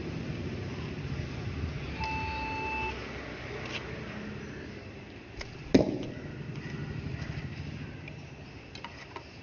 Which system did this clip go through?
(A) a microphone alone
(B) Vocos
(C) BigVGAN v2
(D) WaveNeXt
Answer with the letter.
A